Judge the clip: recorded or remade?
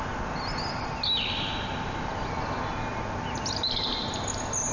recorded